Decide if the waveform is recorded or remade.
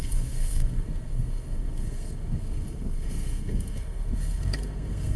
remade